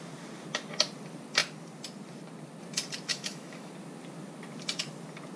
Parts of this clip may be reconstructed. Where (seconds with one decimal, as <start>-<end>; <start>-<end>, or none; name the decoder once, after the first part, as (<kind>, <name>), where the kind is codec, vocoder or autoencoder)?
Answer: 3.1-3.7 (autoencoder, DAC-VAE)